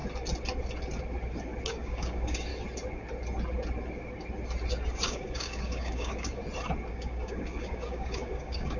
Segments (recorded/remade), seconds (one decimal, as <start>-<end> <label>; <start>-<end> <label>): 0.0-1.7 recorded; 1.7-2.5 remade; 2.5-4.9 recorded; 4.9-6.4 remade; 6.4-6.9 recorded; 6.9-8.8 remade